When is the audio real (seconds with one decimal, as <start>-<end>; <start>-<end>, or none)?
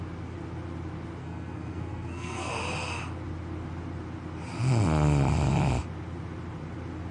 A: 0.0-1.2; 2.5-7.1